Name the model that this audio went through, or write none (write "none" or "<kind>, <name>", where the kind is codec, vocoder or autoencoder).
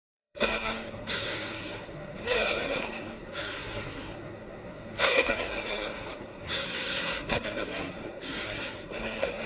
codec, SNAC